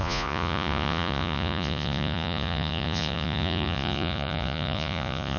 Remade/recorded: remade